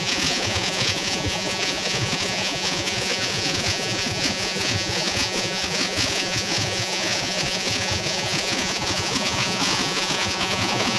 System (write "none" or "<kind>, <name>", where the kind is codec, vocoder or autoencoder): vocoder, Vocos